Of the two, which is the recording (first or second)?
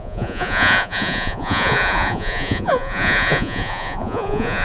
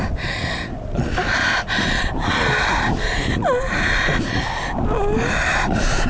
second